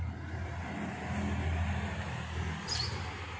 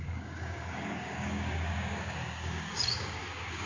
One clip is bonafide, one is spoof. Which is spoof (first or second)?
second